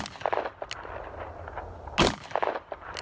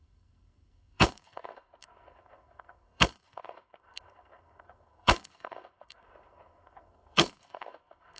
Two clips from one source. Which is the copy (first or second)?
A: second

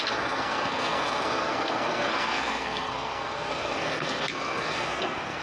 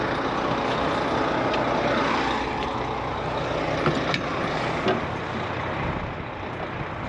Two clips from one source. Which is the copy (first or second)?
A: first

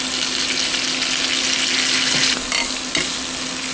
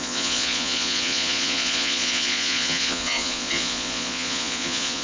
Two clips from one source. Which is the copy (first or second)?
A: second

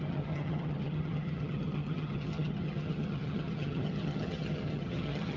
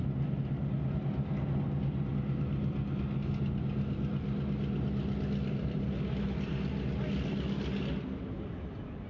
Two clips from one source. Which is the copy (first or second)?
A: first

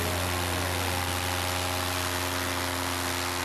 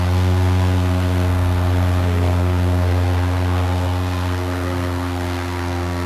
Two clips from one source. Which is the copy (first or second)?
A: second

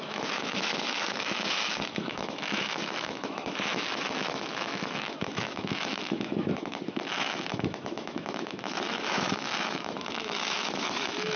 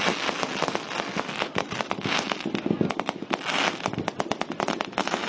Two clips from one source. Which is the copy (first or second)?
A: first